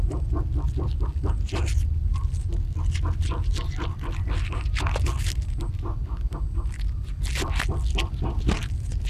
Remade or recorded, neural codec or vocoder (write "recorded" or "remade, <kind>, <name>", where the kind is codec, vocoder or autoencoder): recorded